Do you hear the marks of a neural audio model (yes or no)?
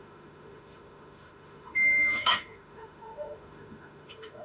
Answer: yes